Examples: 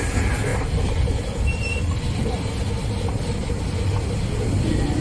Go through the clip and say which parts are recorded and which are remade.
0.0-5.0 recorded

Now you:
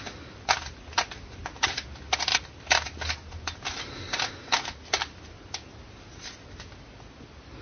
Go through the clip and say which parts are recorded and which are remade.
0.0-7.6 recorded

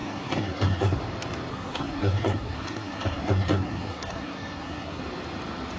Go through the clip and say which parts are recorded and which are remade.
0.0-1.0 remade; 1.0-1.5 recorded; 1.5-5.0 remade; 5.0-5.8 recorded